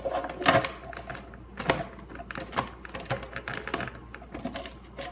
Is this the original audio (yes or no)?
yes